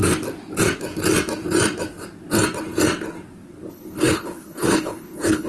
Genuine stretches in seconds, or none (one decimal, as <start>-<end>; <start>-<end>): 0.0-3.7